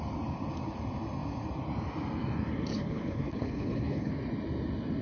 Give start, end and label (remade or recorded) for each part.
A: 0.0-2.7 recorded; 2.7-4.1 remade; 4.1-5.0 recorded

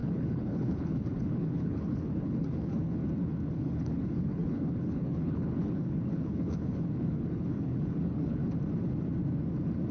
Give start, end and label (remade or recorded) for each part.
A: 0.0-3.0 remade; 3.0-3.5 recorded; 3.5-8.4 remade; 8.4-9.9 recorded

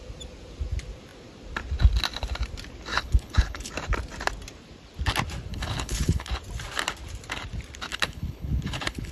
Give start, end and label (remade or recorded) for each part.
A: 0.0-2.9 recorded; 2.9-3.7 remade; 3.7-5.5 recorded; 5.5-6.3 remade; 6.3-7.9 recorded; 7.9-9.1 remade

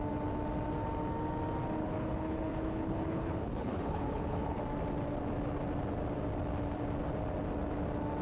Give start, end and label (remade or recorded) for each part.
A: 0.0-1.8 recorded; 1.8-4.6 remade; 4.6-8.2 recorded

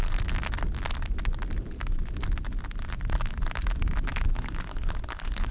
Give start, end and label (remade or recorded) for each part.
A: 0.0-4.1 recorded; 4.1-5.5 remade

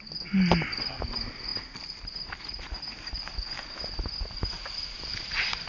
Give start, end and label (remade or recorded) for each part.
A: 0.0-5.7 recorded

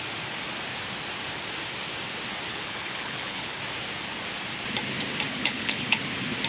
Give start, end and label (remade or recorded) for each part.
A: 0.0-2.5 recorded; 2.5-3.6 remade; 3.6-5.3 recorded; 5.3-6.0 remade; 6.0-6.5 recorded

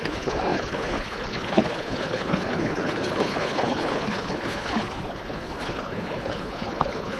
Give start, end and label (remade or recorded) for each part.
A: 0.0-7.2 remade